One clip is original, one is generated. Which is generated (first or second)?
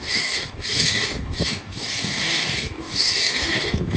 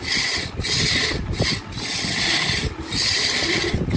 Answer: first